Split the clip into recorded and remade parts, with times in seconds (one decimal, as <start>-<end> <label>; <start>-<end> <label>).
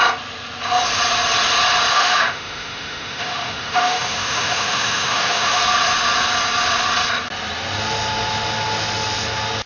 0.0-1.9 recorded; 1.9-5.6 remade; 5.6-9.7 recorded